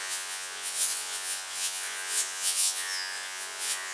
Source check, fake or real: fake